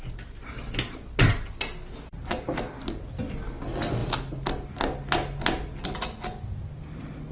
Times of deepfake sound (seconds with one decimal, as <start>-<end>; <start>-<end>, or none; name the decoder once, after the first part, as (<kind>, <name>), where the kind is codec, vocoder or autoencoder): none